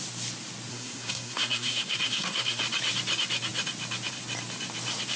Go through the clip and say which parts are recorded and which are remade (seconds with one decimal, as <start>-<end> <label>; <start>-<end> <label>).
0.0-0.7 recorded; 0.7-2.6 remade; 2.6-5.2 recorded